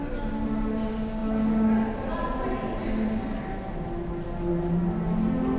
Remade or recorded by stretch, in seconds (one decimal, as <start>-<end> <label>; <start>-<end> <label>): 0.0-5.6 recorded